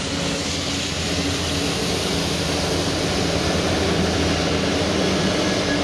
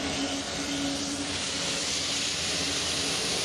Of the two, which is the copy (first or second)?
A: second